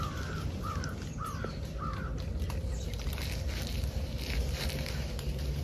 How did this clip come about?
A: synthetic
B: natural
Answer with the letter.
B